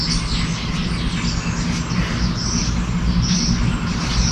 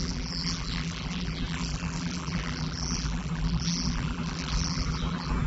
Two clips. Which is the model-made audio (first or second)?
second